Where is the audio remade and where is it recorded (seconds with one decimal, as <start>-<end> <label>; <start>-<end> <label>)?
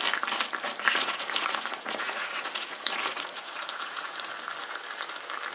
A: 0.0-1.0 recorded; 1.0-4.3 remade; 4.3-5.5 recorded